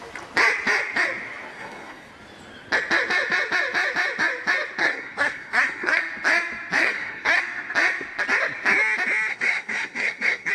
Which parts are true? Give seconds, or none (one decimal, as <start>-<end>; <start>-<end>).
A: 0.0-1.5; 2.1-4.8; 6.0-6.8; 7.4-9.3

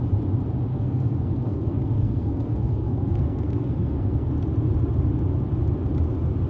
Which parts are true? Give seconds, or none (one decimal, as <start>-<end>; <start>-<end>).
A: 0.0-0.7; 4.3-6.5

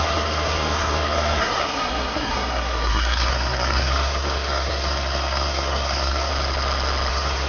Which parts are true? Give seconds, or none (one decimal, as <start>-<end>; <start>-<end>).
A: 6.3-7.1

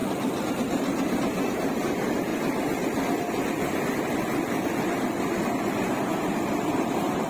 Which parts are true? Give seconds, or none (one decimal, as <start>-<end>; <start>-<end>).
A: 0.0-7.3

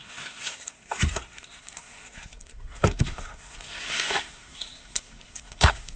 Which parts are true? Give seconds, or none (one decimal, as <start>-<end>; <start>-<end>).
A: none

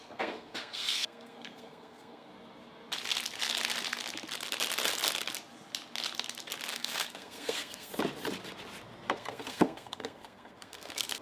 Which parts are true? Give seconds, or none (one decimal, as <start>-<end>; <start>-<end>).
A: 2.3-6.7; 7.9-9.1